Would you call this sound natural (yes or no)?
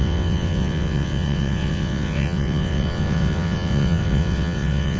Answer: no